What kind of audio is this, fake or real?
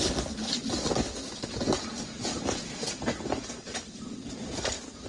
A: real